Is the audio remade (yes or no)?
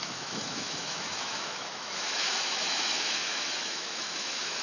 yes